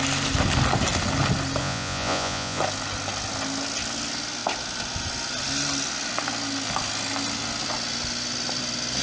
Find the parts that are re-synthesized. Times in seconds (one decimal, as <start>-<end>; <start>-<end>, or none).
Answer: 1.6-2.6